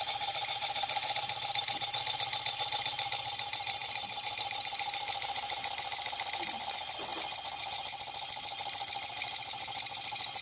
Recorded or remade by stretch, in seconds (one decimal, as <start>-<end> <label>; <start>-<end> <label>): 0.0-10.4 recorded